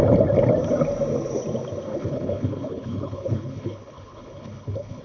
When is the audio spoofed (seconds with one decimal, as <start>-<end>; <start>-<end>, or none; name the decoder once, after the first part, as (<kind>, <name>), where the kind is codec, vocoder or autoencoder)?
1.9-5.0 (codec, HILCodec)